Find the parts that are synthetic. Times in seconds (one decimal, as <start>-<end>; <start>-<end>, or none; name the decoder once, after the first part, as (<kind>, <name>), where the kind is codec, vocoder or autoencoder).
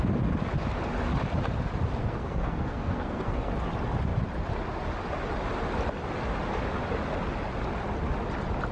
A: 2.0-3.5 (codec, SNAC)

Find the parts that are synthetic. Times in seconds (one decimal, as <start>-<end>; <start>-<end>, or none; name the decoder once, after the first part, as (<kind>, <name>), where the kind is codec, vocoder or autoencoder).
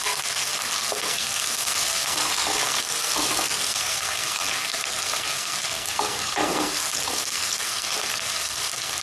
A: 0.0-9.0 (codec, SNAC)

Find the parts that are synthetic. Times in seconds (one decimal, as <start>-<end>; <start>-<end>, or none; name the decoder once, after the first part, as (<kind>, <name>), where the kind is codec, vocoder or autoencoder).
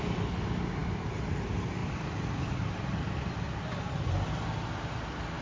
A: none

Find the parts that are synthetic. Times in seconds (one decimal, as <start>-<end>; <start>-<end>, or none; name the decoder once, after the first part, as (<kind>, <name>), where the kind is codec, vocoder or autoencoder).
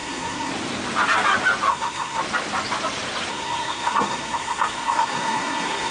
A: 0.0-0.5 (codec, SNAC); 1.7-2.2; 3.3-5.9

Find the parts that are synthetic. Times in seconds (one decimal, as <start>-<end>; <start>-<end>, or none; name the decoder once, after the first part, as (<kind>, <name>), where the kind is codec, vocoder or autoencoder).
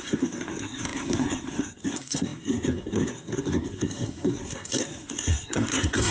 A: 0.0-6.1 (codec, SNAC)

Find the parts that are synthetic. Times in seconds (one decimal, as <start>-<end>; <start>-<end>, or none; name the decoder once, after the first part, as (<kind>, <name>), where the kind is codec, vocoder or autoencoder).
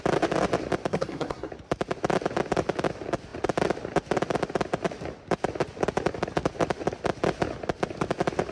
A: 0.9-1.5 (codec, SNAC)